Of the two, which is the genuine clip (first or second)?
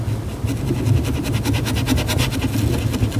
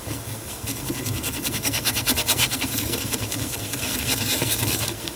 first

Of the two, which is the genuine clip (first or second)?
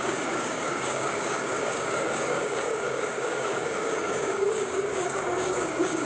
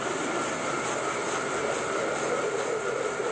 second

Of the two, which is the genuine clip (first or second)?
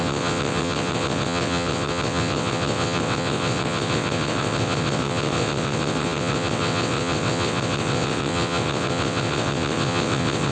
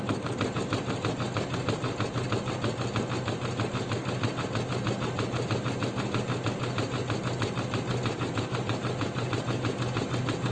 second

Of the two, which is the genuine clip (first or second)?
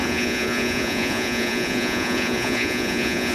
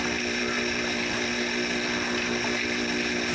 second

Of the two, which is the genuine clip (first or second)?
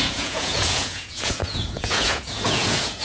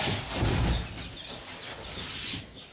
second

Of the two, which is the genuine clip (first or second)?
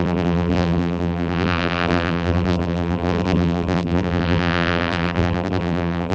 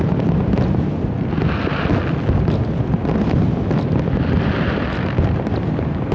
second